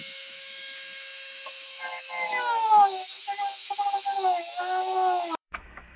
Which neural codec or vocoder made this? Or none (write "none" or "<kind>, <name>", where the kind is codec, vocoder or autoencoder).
autoencoder, DAC-VAE